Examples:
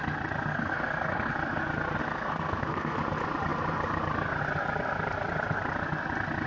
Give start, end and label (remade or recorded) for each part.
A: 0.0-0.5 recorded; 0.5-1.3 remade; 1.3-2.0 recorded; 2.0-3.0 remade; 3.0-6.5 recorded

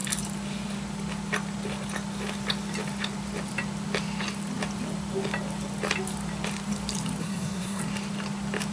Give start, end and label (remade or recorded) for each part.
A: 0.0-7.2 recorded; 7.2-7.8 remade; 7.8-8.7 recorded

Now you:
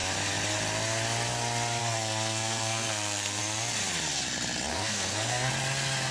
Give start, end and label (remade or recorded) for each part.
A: 0.0-1.8 recorded; 1.8-3.4 remade; 3.4-4.7 recorded; 4.7-5.5 remade; 5.5-6.1 recorded

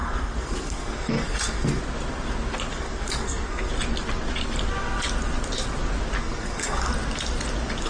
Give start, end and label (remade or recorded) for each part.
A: 0.0-1.8 remade; 1.8-2.7 recorded; 2.7-3.7 remade; 3.7-6.2 recorded; 6.2-6.9 remade; 6.9-7.9 recorded

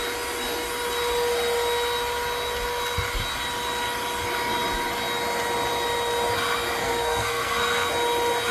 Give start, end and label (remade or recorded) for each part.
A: 0.0-6.8 recorded; 6.8-7.9 remade; 7.9-8.5 recorded

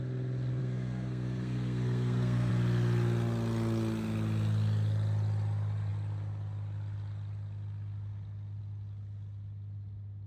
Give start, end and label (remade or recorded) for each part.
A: 0.0-0.6 recorded; 0.6-2.5 remade; 2.5-10.3 recorded

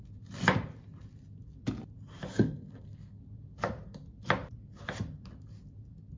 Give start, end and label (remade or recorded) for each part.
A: 0.0-2.3 recorded; 2.3-3.2 remade; 3.2-6.2 recorded